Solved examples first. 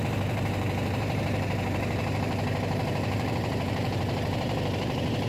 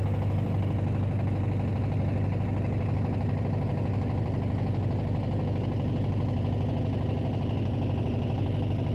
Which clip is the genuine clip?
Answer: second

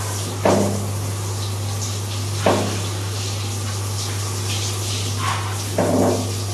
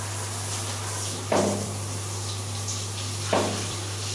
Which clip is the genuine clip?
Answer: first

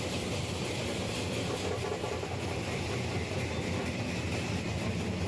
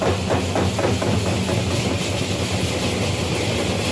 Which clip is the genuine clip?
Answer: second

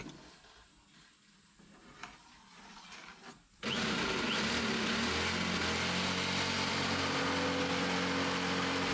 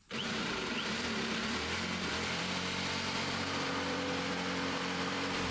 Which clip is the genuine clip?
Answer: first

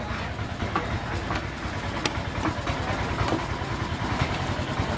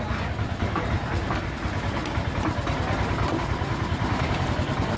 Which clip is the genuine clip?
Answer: first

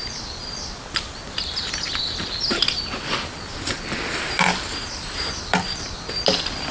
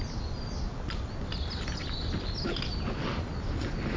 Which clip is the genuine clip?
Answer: second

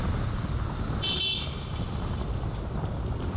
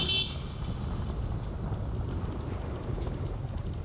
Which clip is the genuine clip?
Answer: second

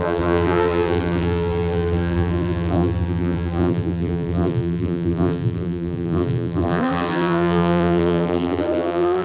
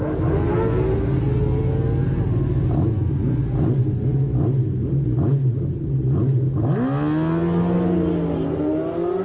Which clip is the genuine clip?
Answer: second